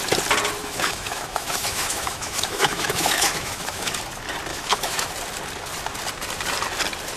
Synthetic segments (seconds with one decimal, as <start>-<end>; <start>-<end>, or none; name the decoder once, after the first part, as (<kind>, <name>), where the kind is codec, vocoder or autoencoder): 0.6-3.9 (autoencoder, DAC-VAE); 4.5-5.1